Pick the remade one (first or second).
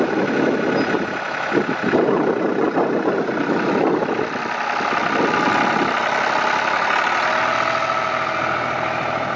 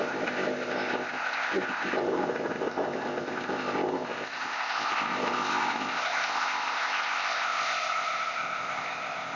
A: second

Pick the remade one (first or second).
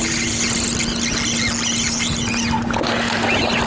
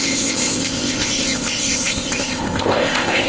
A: second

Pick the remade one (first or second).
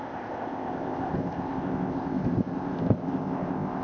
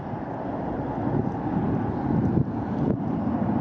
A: first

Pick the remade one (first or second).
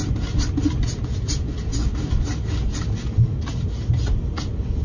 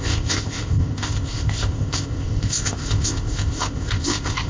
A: second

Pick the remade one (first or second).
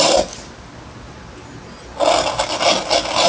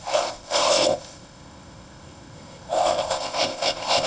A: second